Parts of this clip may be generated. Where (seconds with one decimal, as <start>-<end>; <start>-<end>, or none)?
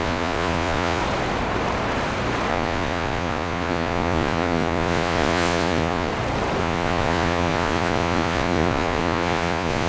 0.0-1.0; 2.5-6.1; 6.6-9.9